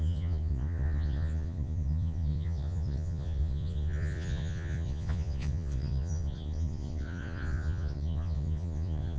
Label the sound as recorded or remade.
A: remade